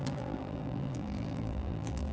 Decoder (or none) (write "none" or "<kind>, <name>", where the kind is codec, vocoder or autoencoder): vocoder, BigVGAN v2